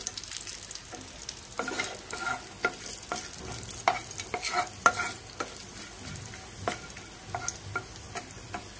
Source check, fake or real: real